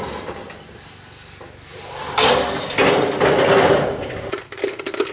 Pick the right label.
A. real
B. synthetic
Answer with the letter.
A